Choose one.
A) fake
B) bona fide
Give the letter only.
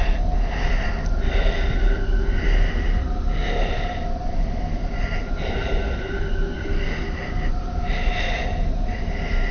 B